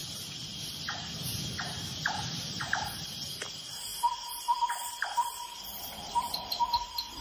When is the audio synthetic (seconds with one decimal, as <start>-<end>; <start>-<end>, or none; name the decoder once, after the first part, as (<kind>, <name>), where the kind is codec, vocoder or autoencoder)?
none